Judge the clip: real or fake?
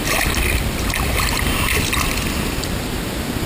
real